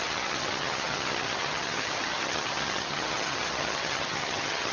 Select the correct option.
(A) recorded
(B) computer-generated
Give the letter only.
B